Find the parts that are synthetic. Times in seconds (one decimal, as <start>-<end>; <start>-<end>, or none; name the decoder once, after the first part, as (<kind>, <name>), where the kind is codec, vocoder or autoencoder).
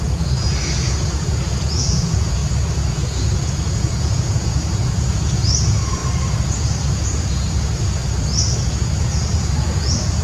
0.0-2.4 (vocoder, Vocos); 2.9-6.0; 6.9-8.0; 8.7-10.2